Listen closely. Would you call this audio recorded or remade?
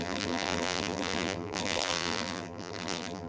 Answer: remade